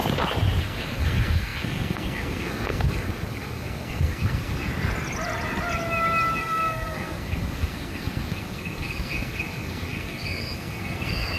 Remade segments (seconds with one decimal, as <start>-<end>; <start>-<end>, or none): 0.6-4.7; 6.4-11.4

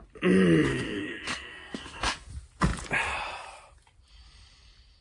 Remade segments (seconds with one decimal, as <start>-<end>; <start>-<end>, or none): 0.7-2.3

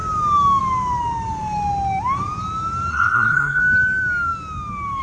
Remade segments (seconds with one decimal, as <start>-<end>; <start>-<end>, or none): 2.9-3.6

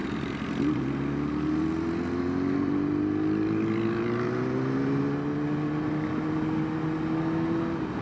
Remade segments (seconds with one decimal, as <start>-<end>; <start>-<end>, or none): none

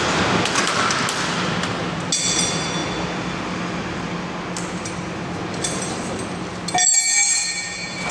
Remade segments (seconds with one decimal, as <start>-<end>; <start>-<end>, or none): none

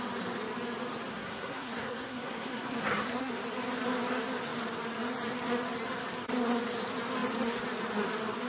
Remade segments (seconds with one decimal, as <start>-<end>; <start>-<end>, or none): 1.1-3.3

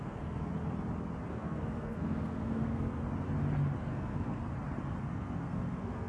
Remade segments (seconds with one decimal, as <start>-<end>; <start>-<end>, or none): 0.0-0.5; 1.3-3.0; 3.8-4.4; 5.0-6.1

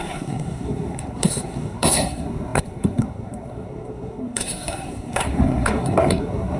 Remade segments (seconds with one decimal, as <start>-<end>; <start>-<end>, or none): 0.0-6.6